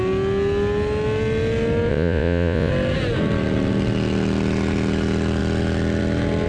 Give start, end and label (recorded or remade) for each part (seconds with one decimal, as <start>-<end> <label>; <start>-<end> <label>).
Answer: 0.0-1.9 recorded; 1.9-2.7 remade; 2.7-6.5 recorded